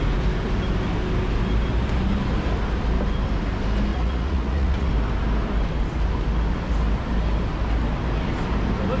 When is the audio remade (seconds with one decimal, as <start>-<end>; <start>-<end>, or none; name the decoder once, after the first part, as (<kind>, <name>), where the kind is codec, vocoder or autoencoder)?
3.9-4.9 (vocoder, Vocos)